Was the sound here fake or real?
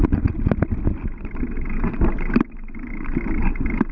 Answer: real